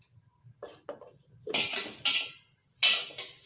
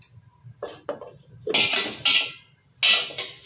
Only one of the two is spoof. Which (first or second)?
first